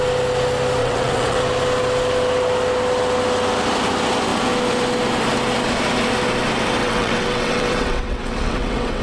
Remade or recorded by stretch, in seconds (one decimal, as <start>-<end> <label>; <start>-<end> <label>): 0.0-0.8 recorded; 0.8-1.4 remade; 1.4-6.8 recorded; 6.8-9.0 remade